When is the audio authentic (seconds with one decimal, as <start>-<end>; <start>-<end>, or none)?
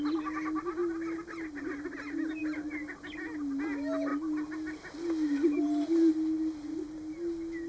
0.0-7.7